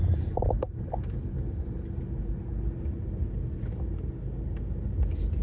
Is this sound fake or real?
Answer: real